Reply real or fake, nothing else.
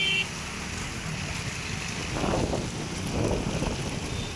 real